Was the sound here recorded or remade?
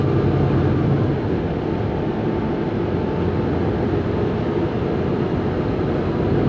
recorded